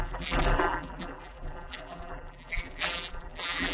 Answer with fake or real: fake